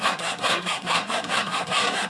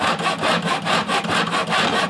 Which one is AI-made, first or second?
first